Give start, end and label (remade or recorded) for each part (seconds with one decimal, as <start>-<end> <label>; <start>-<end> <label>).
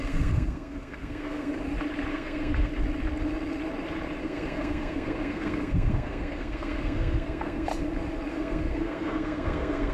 0.0-1.5 remade; 1.5-2.1 recorded; 2.1-2.7 remade; 2.7-4.2 recorded; 4.2-7.7 remade; 7.7-8.3 recorded; 8.3-9.9 remade